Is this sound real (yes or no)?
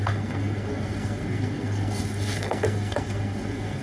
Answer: no